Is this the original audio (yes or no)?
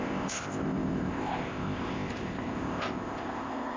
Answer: no